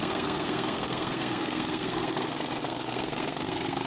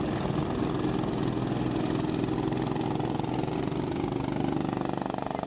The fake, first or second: first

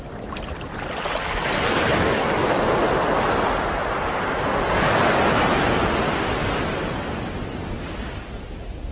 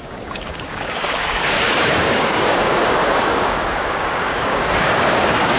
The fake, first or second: second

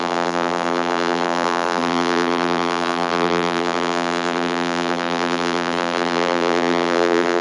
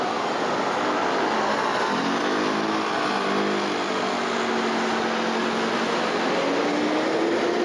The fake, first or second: first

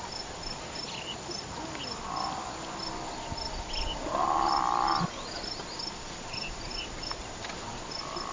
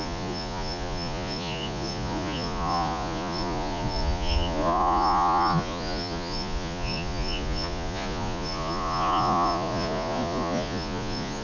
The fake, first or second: second